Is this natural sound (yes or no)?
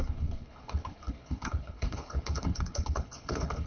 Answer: no